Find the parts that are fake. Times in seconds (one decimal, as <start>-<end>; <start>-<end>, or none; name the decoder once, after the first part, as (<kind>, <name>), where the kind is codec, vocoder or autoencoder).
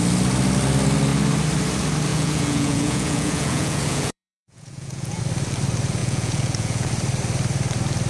2.1-5.2 (vocoder, Vocos); 6.0-6.9